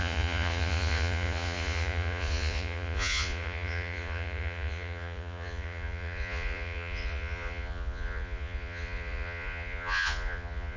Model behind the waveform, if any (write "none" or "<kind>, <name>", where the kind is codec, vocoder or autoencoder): vocoder, Vocos